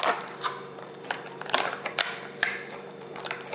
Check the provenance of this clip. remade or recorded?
remade